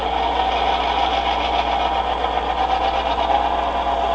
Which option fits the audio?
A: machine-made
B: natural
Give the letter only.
B